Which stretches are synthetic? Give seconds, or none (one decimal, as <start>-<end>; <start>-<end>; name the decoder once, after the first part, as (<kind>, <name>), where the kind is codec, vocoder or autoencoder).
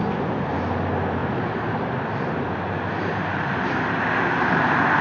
none